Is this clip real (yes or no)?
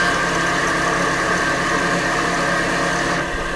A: yes